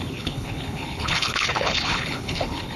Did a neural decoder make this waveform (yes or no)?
yes